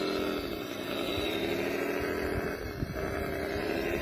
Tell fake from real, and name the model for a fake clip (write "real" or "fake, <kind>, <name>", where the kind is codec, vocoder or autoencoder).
real